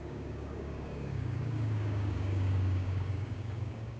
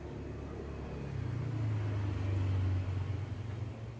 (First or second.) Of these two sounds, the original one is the second